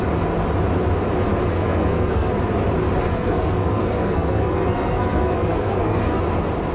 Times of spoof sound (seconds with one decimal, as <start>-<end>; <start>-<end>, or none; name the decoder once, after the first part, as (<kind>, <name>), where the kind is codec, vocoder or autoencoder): 1.5-2.3 (codec, SNAC); 3.1-6.2